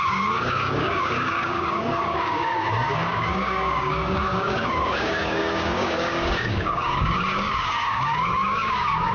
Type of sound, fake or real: fake